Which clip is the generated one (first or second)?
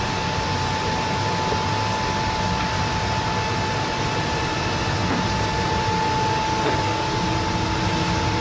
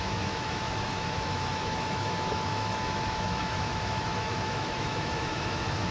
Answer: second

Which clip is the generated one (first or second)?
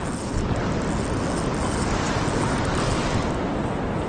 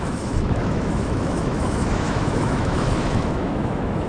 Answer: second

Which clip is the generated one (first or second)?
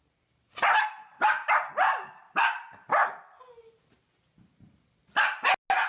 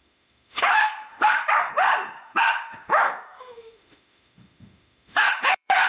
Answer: second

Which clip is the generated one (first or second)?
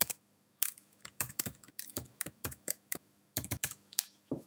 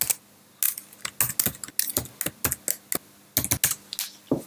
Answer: first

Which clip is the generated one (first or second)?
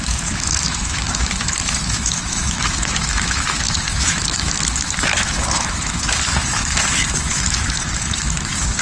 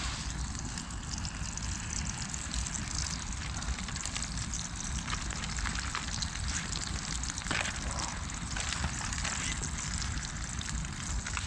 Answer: first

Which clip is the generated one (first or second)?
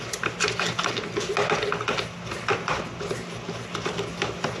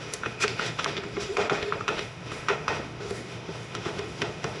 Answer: second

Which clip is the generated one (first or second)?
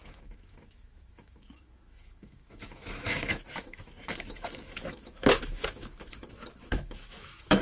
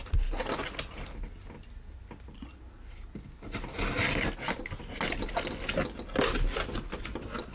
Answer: first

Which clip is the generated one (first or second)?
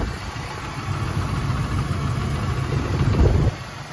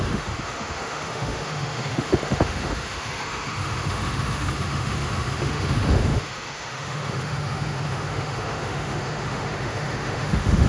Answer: second